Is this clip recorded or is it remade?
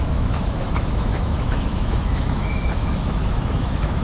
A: remade